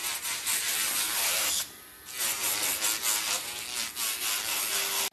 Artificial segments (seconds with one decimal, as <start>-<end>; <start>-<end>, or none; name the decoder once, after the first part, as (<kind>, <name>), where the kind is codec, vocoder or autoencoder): 0.0-2.5 (vocoder, BigVGAN v2)